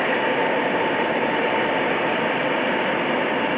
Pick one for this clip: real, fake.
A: real